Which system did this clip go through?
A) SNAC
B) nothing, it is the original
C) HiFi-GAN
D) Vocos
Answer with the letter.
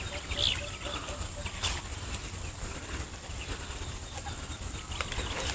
B